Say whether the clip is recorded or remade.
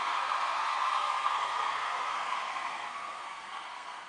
remade